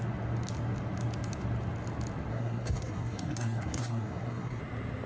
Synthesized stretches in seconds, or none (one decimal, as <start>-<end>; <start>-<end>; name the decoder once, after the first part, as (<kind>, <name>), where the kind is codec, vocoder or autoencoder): 2.3-4.6 (codec, SNAC)